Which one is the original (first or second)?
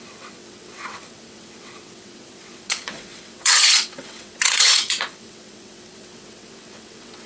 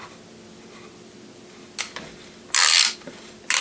second